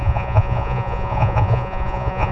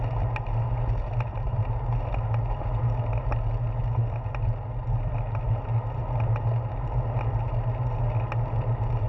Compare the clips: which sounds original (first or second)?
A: second